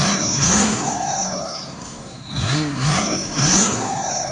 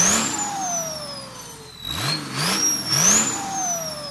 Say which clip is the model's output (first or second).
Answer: first